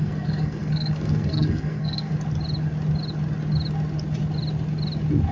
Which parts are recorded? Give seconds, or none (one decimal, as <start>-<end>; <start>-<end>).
2.1-5.3